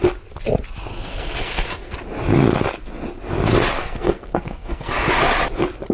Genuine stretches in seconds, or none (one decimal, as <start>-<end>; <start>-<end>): 0.0-0.9; 2.0-3.8; 4.9-5.9